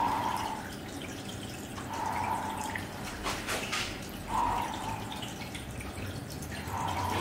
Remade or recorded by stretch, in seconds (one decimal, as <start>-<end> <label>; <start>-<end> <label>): 0.0-6.2 remade; 6.2-7.2 recorded